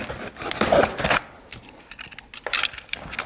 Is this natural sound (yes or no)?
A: no